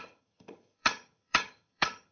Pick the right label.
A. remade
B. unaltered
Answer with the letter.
A